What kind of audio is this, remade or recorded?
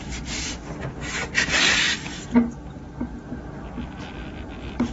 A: recorded